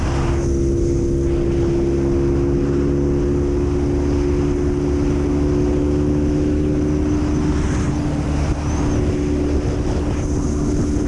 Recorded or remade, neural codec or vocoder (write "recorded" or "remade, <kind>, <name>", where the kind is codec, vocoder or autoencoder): recorded